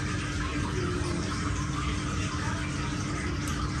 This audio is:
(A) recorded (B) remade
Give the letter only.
A